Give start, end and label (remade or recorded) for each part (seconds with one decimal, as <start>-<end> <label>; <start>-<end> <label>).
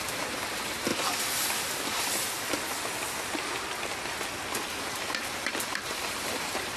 0.0-0.9 remade; 0.9-4.8 recorded; 4.8-6.8 remade